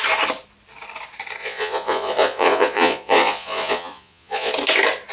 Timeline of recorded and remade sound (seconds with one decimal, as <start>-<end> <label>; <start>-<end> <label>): 0.0-1.4 recorded; 1.4-4.5 remade; 4.5-5.1 recorded